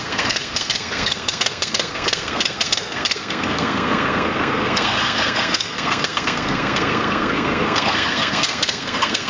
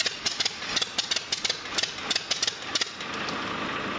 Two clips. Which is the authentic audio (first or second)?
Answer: second